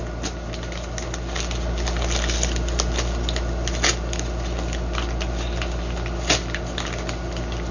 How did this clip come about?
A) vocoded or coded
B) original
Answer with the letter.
B